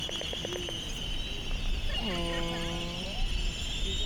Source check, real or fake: real